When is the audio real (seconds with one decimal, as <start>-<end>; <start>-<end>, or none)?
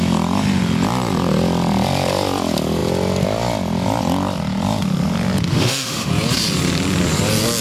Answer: 0.0-5.5; 6.1-7.6